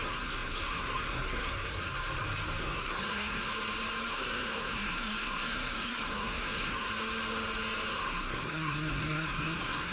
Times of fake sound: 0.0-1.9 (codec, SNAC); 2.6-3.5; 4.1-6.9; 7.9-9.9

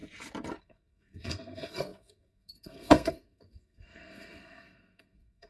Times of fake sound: 0.6-5.5 (codec, SNAC)

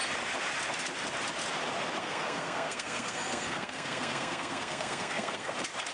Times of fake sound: 2.0-5.5 (codec, SNAC)

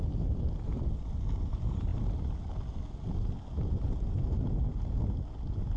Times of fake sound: none

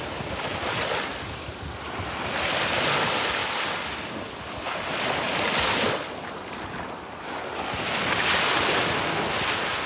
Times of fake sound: none

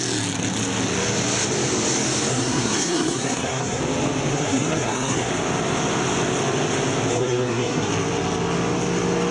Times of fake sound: 2.3-3.8 (codec, SNAC); 4.3-5.3; 7.1-7.9